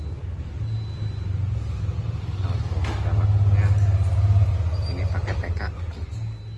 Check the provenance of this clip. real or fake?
real